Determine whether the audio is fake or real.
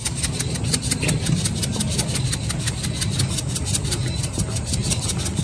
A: real